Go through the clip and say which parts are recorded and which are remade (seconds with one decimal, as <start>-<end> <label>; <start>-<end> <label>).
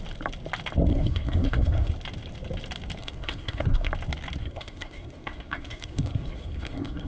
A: 0.0-0.9 recorded; 0.9-1.9 remade; 1.9-3.0 recorded; 3.0-3.9 remade; 3.9-4.4 recorded; 4.4-7.1 remade